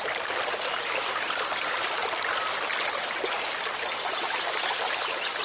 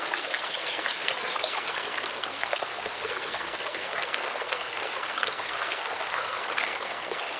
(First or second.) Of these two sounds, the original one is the first